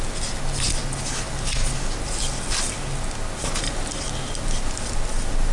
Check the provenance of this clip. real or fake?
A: real